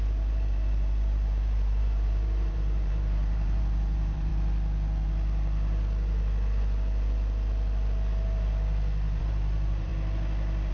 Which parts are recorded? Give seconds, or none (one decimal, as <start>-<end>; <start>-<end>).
4.3-9.2; 9.9-10.7